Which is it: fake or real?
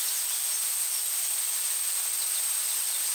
real